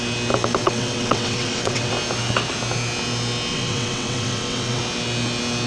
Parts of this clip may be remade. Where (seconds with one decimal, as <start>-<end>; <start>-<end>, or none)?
0.6-1.9; 3.5-4.8